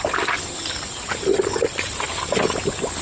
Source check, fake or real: real